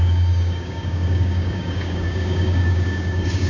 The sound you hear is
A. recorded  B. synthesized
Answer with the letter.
B